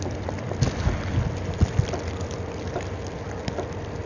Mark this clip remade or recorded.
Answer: recorded